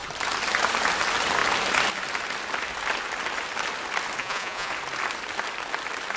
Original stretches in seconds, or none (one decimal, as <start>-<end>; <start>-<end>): 0.0-4.2; 4.7-6.2